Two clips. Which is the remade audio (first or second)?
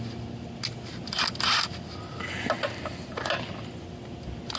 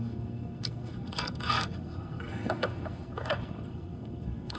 second